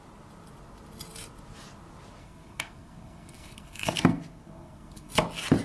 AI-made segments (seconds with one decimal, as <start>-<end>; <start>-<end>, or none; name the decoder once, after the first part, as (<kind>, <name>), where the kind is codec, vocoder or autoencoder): 2.2-5.1 (codec, SNAC)